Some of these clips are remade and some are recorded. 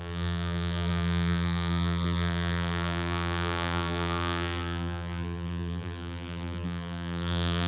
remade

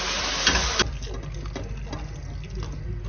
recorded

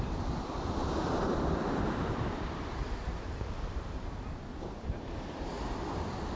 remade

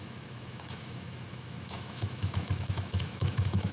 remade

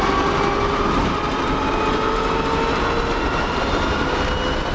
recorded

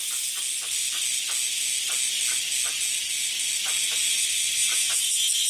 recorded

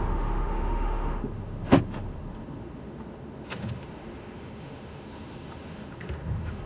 remade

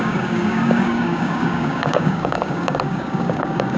remade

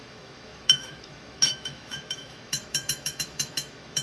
remade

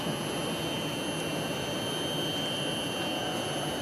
recorded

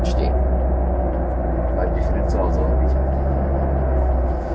recorded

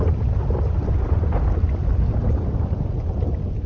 recorded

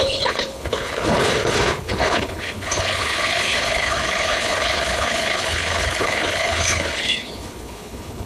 remade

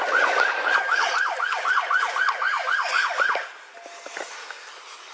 recorded